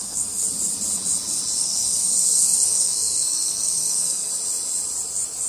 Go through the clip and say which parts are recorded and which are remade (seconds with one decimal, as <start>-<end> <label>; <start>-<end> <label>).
0.0-0.4 remade; 0.4-1.6 recorded; 1.6-4.3 remade; 4.3-5.5 recorded